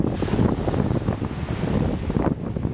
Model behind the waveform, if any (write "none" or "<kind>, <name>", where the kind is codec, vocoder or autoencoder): none